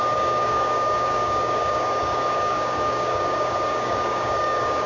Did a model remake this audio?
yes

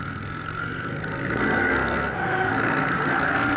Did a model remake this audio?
yes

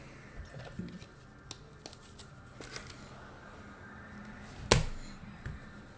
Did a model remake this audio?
no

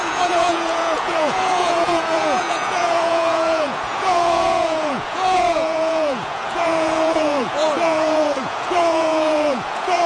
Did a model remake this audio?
yes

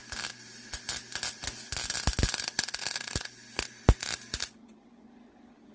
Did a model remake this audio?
no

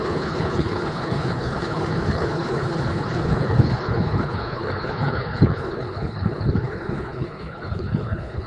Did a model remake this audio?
yes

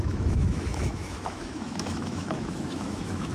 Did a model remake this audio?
yes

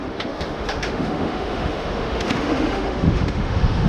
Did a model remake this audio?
yes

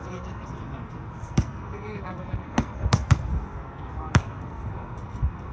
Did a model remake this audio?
yes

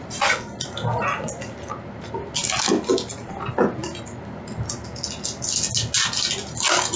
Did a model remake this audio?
no